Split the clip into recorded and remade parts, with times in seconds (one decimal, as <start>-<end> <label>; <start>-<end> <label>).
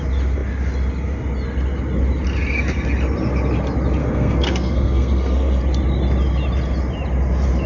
0.0-4.0 recorded; 4.0-5.6 remade; 5.6-7.7 recorded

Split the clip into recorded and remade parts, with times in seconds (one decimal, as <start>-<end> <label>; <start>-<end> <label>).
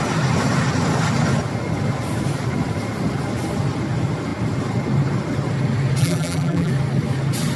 0.0-6.0 recorded; 6.0-6.7 remade; 6.7-7.6 recorded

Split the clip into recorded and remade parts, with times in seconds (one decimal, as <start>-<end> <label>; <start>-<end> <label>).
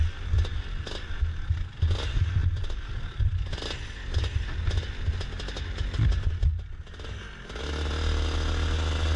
0.0-2.4 recorded; 2.4-4.4 remade; 4.4-9.2 recorded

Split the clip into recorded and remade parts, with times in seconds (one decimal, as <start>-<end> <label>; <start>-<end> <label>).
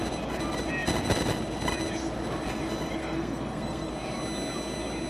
0.0-3.0 recorded; 3.0-3.9 remade; 3.9-5.1 recorded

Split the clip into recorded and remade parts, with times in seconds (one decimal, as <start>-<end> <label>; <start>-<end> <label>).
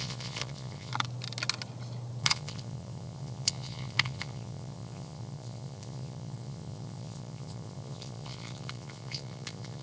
0.0-0.9 remade; 0.9-2.2 recorded; 2.2-9.8 remade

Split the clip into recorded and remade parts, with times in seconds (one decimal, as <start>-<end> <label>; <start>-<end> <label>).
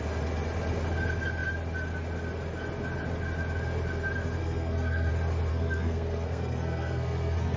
0.0-4.4 recorded; 4.4-5.1 remade; 5.1-5.5 recorded; 5.5-7.6 remade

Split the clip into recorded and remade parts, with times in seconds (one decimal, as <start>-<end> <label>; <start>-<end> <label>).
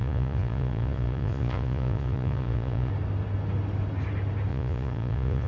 0.0-2.9 remade; 2.9-4.5 recorded; 4.5-5.5 remade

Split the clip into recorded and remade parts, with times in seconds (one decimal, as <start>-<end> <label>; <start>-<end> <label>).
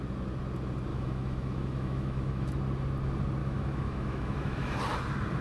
0.0-0.9 recorded; 0.9-2.6 remade; 2.6-3.4 recorded; 3.4-4.8 remade; 4.8-5.4 recorded